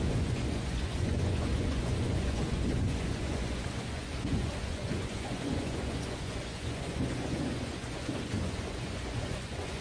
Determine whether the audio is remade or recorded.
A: remade